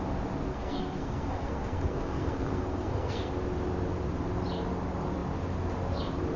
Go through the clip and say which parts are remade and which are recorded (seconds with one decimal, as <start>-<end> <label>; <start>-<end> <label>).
0.0-0.5 recorded; 0.5-3.3 remade; 3.3-6.4 recorded